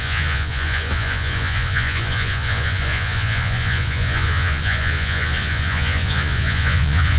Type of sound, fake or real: fake